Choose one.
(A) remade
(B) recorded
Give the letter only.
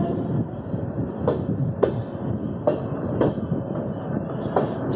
B